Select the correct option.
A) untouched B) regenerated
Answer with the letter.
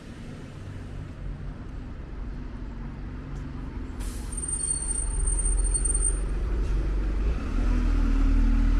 B